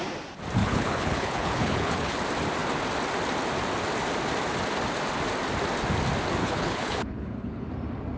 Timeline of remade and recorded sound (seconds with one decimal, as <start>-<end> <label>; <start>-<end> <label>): 0.0-0.6 recorded; 0.6-2.2 remade; 2.2-6.4 recorded; 6.4-7.7 remade; 7.7-8.2 recorded

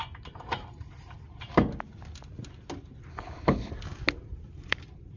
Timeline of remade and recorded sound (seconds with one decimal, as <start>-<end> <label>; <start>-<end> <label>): 0.0-3.1 recorded; 3.1-3.7 remade; 3.7-5.2 recorded

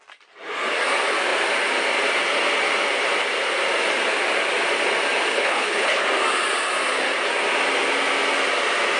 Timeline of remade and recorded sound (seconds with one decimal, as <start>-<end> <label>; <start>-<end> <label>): 0.0-5.3 recorded; 5.3-6.0 remade; 6.0-9.0 recorded